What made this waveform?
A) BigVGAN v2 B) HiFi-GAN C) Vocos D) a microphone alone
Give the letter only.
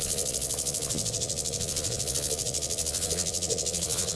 C